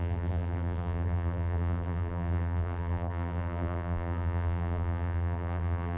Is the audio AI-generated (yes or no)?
yes